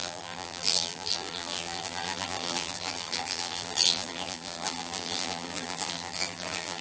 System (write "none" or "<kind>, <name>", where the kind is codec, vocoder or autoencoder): vocoder, BigVGAN v2